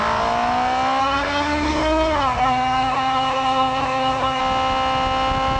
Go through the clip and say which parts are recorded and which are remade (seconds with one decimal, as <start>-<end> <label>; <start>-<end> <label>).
0.0-1.0 recorded; 1.0-4.4 remade; 4.4-5.6 recorded